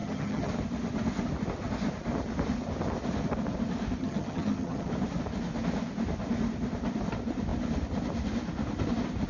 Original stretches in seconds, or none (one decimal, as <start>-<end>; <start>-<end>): 0.5-4.0; 4.9-9.3